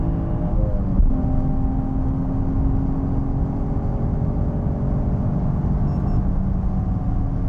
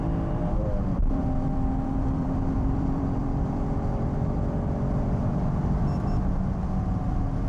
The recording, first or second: first